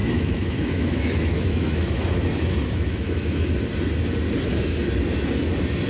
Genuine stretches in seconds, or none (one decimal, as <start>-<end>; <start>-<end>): 3.5-5.9